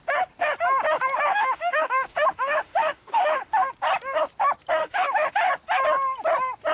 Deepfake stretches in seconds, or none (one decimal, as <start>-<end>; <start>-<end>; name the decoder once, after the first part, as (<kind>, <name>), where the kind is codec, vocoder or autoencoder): 1.3-3.7 (autoencoder, DAC-VAE); 4.8-5.5